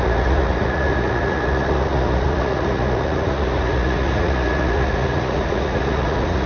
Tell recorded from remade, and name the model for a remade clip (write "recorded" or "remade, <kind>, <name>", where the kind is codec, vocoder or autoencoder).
remade, vocoder, Vocos